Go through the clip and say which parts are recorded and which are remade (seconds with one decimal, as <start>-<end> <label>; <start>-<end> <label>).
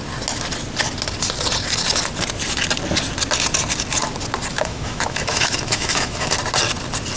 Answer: 0.0-4.5 recorded; 4.5-6.3 remade; 6.3-7.2 recorded